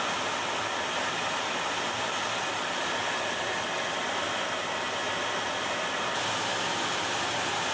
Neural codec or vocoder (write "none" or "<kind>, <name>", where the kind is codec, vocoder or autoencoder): none